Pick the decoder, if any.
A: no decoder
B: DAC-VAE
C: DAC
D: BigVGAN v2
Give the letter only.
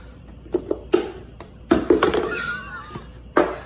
A